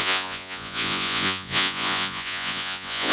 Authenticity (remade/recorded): remade